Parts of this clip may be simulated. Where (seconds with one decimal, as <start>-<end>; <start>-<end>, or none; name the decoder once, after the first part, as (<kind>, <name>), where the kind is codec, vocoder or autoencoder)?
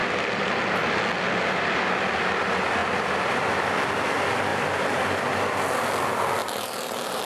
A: 6.4-7.2 (vocoder, BigVGAN v2)